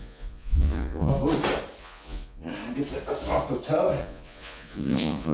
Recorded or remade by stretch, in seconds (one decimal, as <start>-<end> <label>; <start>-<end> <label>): 0.0-1.1 remade; 1.1-1.8 recorded; 1.8-2.5 remade; 2.5-4.0 recorded; 4.0-5.3 remade